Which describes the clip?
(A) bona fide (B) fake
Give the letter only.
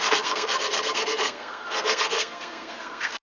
B